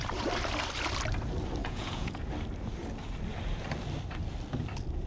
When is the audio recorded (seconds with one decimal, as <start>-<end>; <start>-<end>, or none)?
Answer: 0.0-1.6; 2.2-5.1